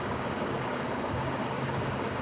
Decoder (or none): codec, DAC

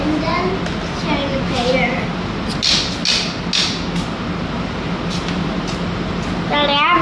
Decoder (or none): none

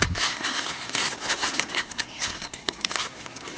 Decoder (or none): codec, SNAC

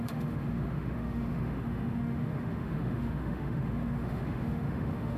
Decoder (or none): autoencoder, DAC-VAE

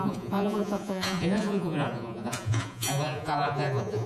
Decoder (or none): vocoder, Vocos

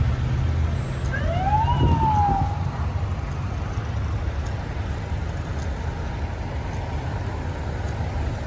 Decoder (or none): none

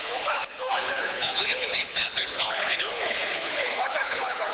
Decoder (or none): codec, HILCodec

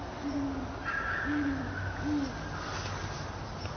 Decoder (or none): none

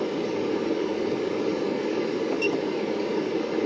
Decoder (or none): codec, DAC